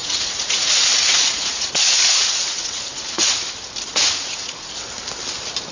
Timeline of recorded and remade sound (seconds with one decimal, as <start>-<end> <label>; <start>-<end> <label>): 0.0-3.4 remade; 3.4-3.9 recorded; 3.9-4.7 remade; 4.7-5.7 recorded